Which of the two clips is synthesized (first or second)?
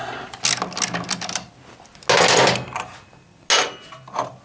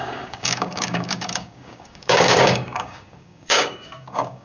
second